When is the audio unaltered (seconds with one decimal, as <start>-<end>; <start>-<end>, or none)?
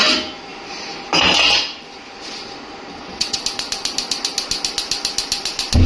0.0-2.9; 3.4-5.9